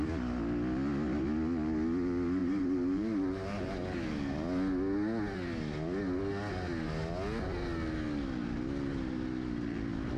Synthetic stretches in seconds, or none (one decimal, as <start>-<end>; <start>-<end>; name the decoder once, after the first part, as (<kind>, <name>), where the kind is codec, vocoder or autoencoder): 2.4-3.7 (vocoder, BigVGAN v2)